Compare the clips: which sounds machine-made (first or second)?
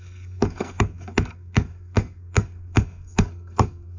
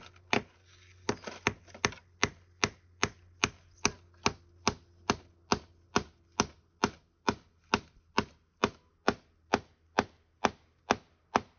first